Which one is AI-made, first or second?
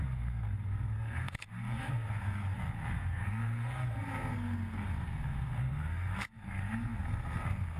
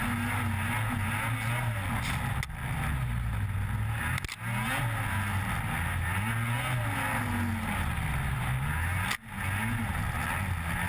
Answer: first